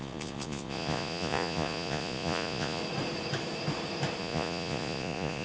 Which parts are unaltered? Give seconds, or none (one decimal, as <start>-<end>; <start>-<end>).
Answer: 2.8-4.2